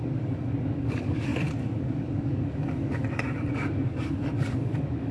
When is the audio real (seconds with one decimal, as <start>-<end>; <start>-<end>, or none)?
none